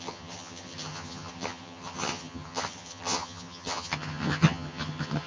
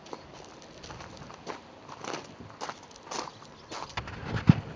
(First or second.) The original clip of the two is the second